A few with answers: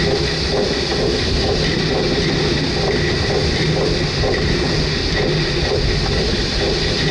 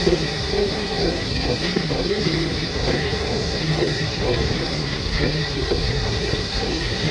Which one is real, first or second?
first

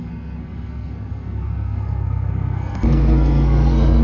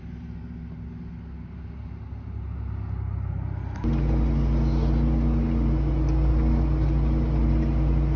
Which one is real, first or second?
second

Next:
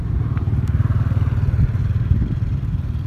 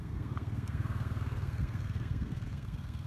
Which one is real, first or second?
first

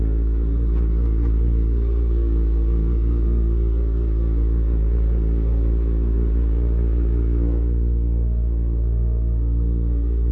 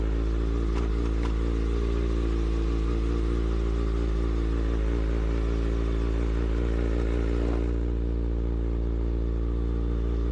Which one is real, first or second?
second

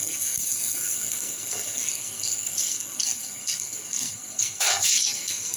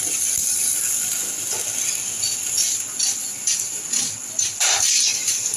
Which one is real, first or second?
second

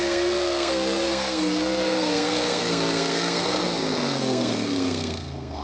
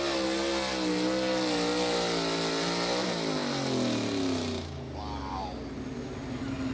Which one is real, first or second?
second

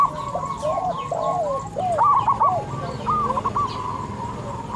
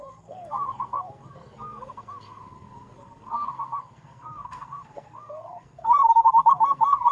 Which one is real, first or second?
first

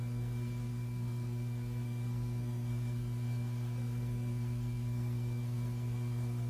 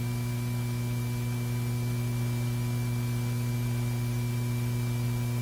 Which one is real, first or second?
second